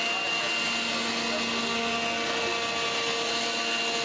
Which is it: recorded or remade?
recorded